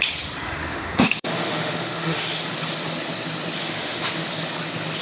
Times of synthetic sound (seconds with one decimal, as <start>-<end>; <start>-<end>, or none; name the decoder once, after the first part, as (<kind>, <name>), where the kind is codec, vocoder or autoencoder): 0.7-2.4 (autoencoder, DAC-VAE); 3.6-4.1